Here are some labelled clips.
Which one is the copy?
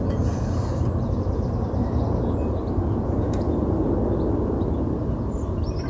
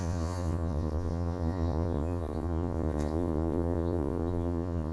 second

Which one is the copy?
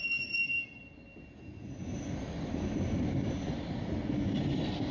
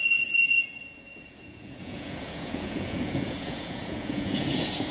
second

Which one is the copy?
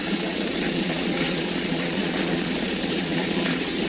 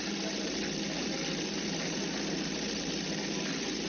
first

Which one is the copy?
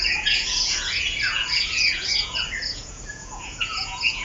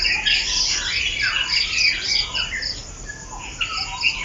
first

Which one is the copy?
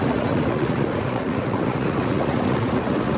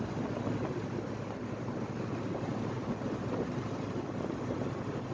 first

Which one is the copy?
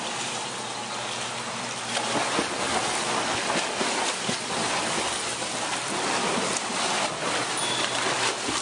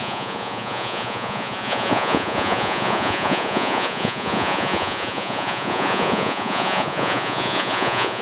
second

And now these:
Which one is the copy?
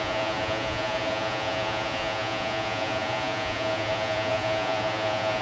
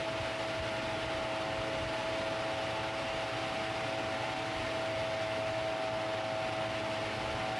first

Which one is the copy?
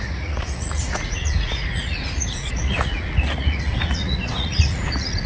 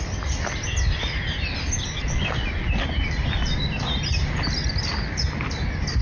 first